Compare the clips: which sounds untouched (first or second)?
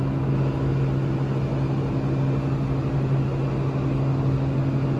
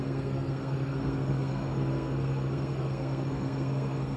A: first